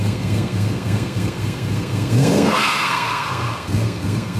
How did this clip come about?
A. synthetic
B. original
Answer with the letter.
A